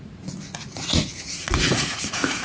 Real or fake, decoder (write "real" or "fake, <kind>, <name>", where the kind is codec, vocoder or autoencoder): fake, vocoder, Vocos